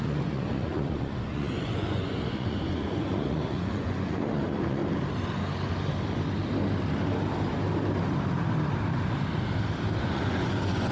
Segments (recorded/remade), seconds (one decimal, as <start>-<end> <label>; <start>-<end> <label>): 0.0-4.8 remade; 4.8-10.0 recorded; 10.0-10.9 remade